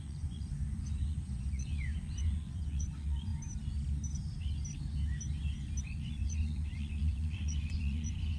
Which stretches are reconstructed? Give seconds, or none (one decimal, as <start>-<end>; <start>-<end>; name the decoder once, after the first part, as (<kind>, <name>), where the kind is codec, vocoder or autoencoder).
0.0-3.3 (vocoder, Vocos); 5.8-8.4